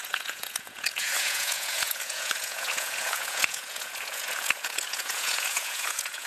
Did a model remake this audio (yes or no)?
yes